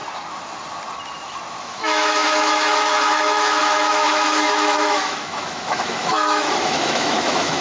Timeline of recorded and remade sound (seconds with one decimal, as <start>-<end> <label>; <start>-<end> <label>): 0.0-1.6 recorded; 1.6-7.6 remade